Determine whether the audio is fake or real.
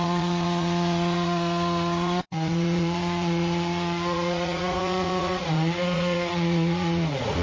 fake